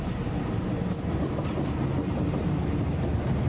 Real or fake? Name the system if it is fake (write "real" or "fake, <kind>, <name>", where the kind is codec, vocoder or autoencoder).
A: fake, vocoder, BigVGAN v2